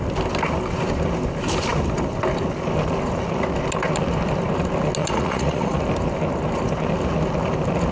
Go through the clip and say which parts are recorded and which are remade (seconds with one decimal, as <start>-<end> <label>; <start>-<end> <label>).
0.0-5.0 recorded; 5.0-5.8 remade; 5.8-7.9 recorded